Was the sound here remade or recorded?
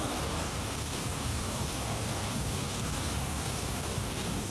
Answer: remade